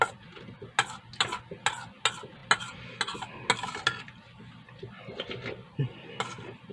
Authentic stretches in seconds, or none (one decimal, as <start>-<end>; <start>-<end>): 0.0-6.7